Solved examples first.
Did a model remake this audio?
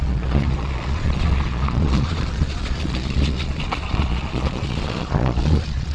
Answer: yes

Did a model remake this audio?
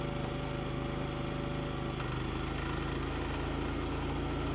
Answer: no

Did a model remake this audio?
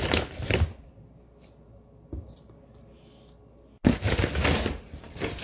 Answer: no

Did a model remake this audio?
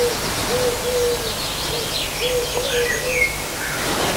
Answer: no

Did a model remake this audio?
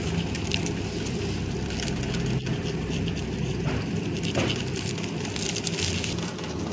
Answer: no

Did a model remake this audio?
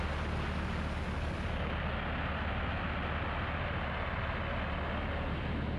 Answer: no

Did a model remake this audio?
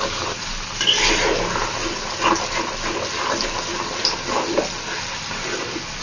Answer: no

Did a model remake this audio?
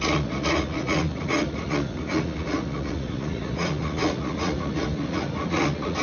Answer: yes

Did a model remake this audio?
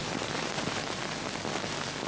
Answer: no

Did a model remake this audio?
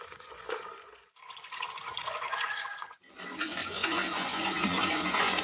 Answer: yes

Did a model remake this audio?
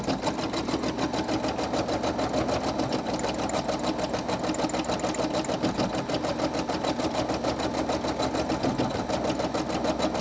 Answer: no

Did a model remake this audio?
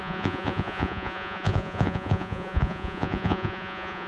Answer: yes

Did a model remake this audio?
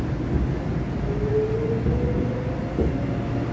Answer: no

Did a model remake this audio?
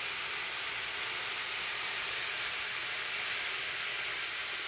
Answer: no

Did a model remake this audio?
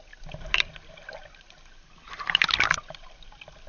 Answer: no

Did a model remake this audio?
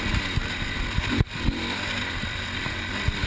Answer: no